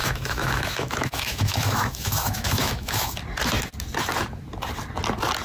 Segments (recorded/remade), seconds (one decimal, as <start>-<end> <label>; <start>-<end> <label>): 0.0-3.2 remade; 3.2-5.4 recorded